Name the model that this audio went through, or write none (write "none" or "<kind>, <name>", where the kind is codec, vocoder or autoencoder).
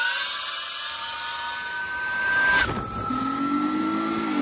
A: none